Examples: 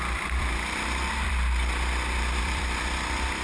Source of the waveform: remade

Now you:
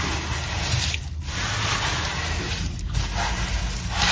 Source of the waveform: recorded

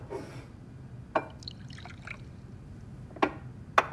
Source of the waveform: recorded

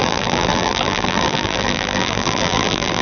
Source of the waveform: remade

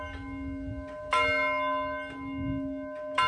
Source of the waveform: recorded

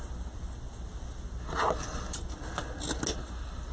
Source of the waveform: recorded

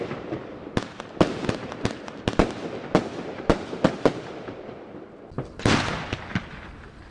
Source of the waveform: recorded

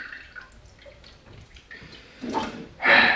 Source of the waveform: remade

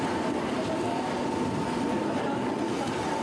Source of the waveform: recorded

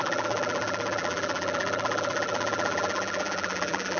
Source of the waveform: remade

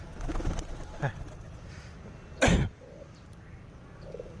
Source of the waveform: recorded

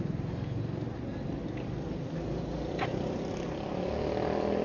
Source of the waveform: recorded